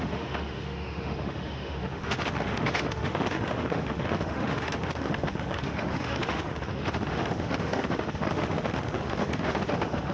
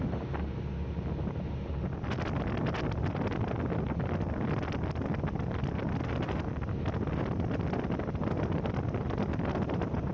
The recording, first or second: second